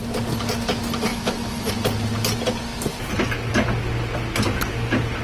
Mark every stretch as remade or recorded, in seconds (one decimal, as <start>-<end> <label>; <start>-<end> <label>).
0.0-1.1 recorded; 1.1-1.7 remade; 1.7-5.2 recorded